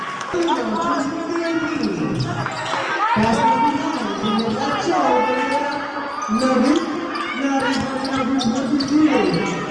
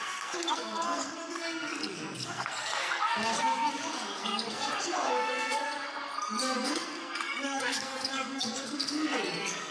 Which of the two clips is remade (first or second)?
second